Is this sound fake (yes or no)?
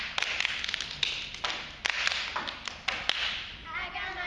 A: no